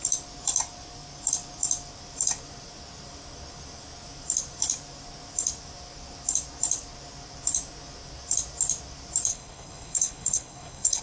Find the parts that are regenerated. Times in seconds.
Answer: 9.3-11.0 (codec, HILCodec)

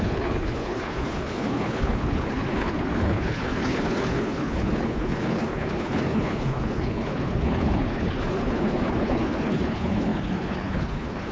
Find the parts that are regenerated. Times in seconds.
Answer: 0.0-11.3 (codec, HILCodec)

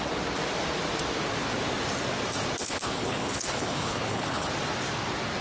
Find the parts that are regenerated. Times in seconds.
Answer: 2.6-4.5 (codec, HILCodec)

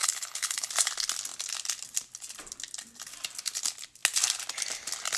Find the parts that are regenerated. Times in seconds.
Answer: 0.0-0.7 (codec, HILCodec)

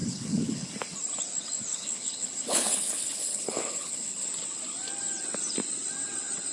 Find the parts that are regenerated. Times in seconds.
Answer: 0.0-0.7 (codec, HILCodec); 1.7-4.3

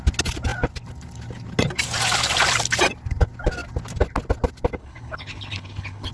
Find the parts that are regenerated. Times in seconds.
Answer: 4.8-6.1 (codec, HILCodec)

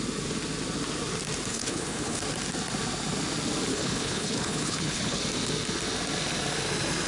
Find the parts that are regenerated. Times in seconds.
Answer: 1.5-2.2 (codec, HILCodec); 3.7-5.2

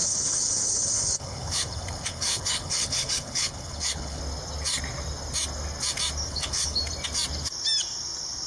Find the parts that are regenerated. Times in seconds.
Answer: 0.0-4.2 (codec, HILCodec); 6.3-6.8